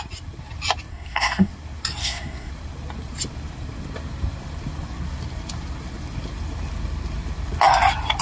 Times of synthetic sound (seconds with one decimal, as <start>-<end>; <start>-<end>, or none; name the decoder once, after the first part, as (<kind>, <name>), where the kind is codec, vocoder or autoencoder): 0.9-1.5 (codec, SNAC); 2.0-2.5